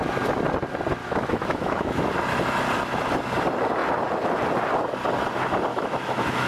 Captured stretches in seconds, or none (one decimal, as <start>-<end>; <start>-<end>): 0.0-1.0; 2.1-5.7